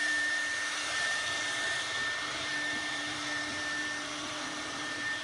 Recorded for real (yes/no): no